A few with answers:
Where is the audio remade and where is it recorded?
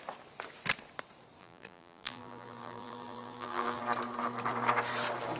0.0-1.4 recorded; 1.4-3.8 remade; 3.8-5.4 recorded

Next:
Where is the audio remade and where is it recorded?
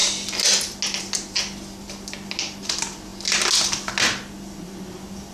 0.0-5.3 recorded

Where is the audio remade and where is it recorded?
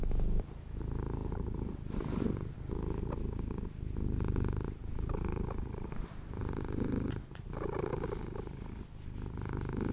0.0-1.2 recorded; 1.2-2.7 remade; 2.7-4.8 recorded; 4.8-7.9 remade; 7.9-9.9 recorded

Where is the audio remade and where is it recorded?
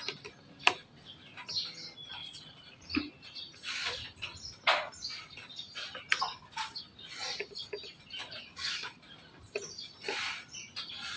0.0-2.2 recorded; 2.2-2.9 remade; 2.9-11.2 recorded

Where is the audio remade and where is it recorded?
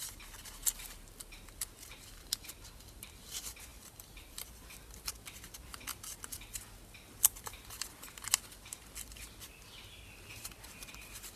0.0-3.7 recorded; 3.7-5.1 remade; 5.1-11.4 recorded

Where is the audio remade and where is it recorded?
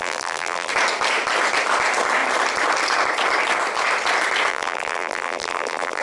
0.0-0.7 remade; 0.7-4.5 recorded; 4.5-6.0 remade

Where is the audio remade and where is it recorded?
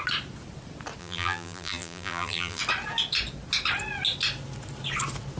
0.0-1.0 recorded; 1.0-2.6 remade; 2.6-5.4 recorded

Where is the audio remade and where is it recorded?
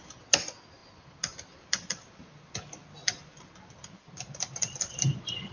0.0-5.5 remade